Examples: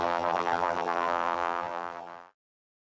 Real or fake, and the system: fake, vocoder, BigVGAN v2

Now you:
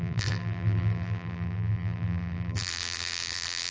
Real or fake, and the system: fake, vocoder, BigVGAN v2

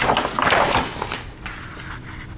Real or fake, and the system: real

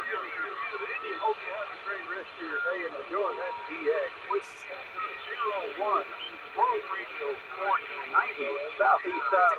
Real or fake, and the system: real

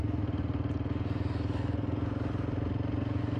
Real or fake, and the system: real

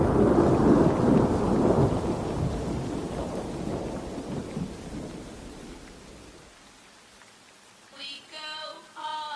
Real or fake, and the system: real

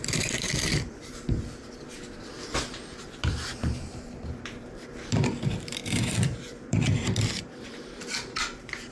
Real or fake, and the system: fake, vocoder, BigVGAN v2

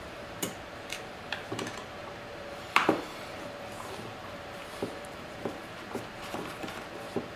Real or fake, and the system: fake, vocoder, BigVGAN v2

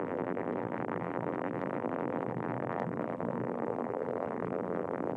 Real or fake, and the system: fake, vocoder, BigVGAN v2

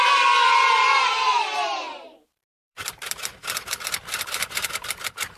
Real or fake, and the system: fake, vocoder, BigVGAN v2